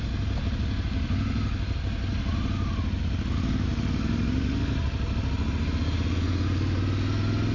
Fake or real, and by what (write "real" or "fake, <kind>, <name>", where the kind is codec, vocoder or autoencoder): real